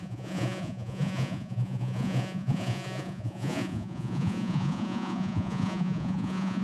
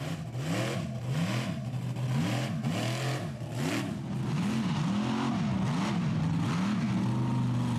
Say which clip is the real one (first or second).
second